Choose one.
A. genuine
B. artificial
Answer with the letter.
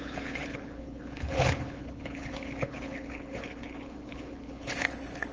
B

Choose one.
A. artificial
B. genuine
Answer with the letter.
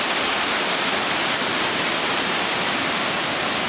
B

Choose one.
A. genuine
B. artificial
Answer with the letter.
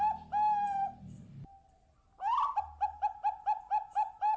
A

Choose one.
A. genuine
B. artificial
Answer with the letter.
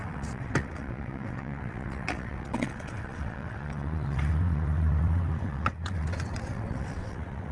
B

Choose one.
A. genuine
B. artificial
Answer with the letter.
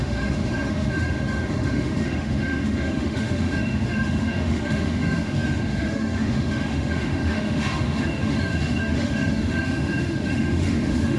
B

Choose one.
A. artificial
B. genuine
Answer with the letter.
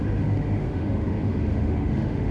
A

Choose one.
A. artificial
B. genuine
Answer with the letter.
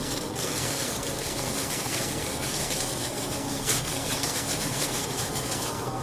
A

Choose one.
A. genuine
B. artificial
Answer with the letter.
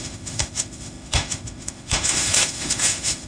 B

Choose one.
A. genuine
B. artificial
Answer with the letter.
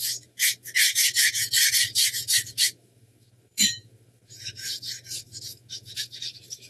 B